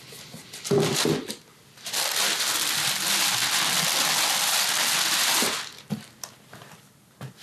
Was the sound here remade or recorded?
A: recorded